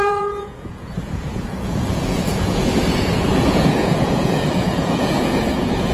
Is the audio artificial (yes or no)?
yes